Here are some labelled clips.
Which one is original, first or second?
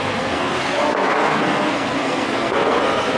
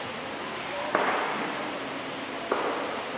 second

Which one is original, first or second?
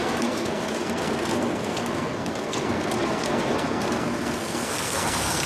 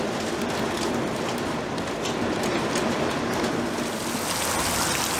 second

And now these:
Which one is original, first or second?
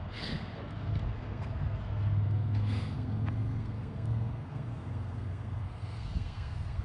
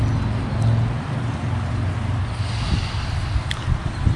second